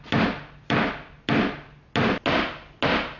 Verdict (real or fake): real